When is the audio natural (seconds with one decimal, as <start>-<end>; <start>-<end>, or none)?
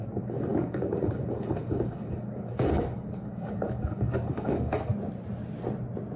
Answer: 4.9-6.2